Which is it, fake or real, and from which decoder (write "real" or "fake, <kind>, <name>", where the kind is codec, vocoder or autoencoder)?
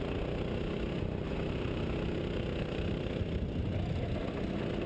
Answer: real